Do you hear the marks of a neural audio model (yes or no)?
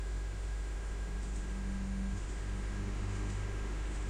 yes